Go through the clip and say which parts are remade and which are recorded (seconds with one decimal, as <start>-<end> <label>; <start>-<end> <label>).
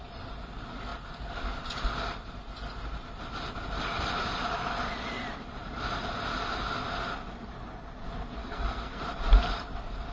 0.0-8.4 recorded; 8.4-9.0 remade; 9.0-10.1 recorded